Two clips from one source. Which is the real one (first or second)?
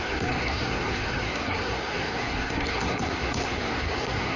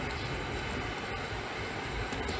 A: second